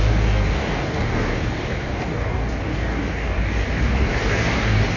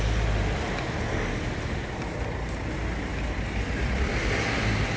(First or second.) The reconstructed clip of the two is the first